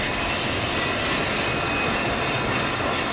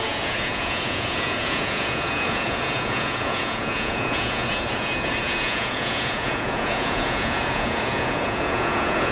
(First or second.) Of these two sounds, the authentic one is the first